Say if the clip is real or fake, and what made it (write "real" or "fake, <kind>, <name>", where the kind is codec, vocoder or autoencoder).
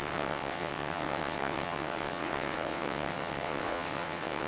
fake, vocoder, WaveNeXt